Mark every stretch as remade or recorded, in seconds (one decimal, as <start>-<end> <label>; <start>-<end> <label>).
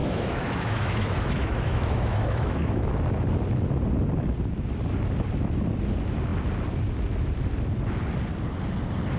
0.0-2.9 remade; 2.9-9.2 recorded